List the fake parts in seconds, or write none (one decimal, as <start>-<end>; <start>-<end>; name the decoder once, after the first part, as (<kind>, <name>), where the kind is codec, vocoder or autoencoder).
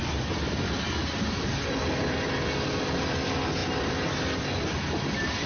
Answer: none